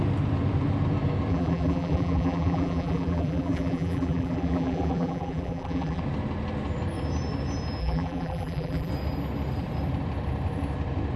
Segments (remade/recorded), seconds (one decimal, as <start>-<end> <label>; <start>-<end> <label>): 0.0-1.3 recorded; 1.3-6.0 remade; 6.0-7.8 recorded; 7.8-8.9 remade; 8.9-11.2 recorded